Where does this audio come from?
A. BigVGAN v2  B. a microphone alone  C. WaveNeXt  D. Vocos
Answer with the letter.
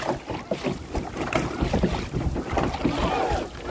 B